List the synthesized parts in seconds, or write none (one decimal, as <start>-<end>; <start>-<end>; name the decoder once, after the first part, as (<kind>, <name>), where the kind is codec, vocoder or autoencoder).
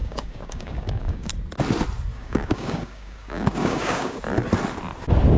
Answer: 0.0-1.3 (codec, DAC); 2.1-4.2